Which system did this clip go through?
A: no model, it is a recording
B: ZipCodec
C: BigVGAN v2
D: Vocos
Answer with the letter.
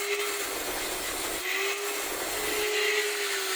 A